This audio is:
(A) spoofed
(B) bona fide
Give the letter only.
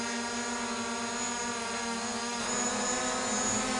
B